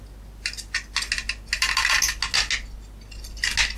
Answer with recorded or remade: recorded